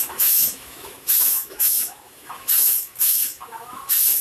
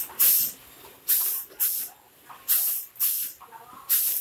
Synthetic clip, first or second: first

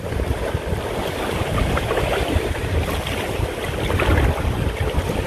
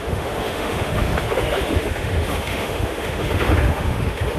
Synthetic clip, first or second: second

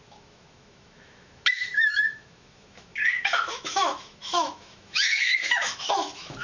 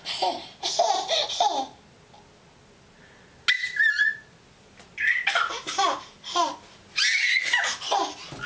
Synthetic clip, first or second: first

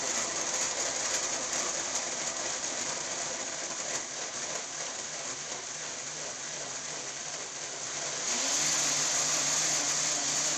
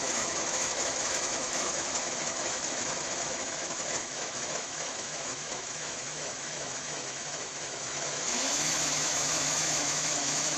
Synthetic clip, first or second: second